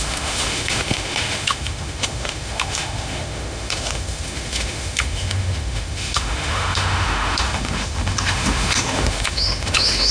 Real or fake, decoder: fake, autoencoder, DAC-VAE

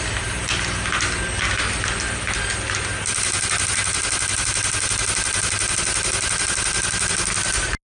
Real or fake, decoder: real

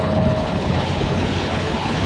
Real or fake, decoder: fake, codec, HILCodec